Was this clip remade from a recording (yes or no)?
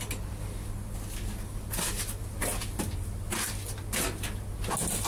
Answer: no